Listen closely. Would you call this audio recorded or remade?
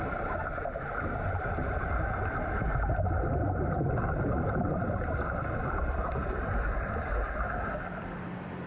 recorded